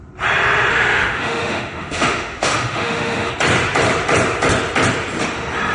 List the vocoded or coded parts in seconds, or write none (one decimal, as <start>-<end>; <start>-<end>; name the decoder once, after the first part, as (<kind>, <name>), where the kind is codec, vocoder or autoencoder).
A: 0.7-3.3 (autoencoder, DAC-VAE)